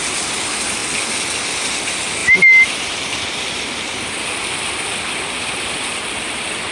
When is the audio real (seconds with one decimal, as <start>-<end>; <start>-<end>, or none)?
0.0-6.7